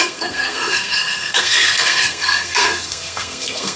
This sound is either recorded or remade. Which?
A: remade